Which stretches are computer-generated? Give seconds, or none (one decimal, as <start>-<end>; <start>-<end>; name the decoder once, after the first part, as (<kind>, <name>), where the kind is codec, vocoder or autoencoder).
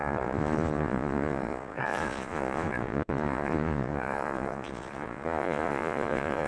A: 0.0-6.5 (vocoder, Vocos)